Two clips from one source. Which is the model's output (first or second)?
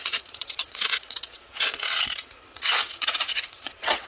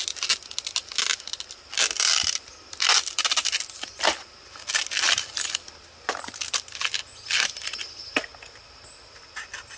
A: first